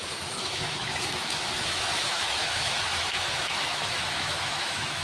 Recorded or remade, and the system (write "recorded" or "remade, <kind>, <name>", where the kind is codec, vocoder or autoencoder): remade, autoencoder, DAC-VAE